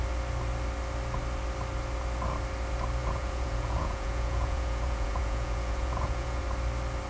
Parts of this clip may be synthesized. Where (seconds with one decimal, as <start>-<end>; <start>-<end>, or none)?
3.0-6.4